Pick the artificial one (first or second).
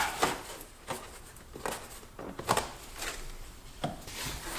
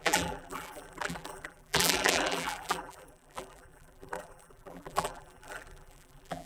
second